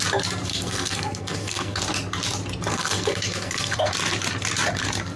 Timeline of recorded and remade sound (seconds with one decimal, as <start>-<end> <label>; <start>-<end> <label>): 0.0-0.5 recorded; 0.5-1.8 remade; 1.8-2.7 recorded; 2.7-3.9 remade; 3.9-5.2 recorded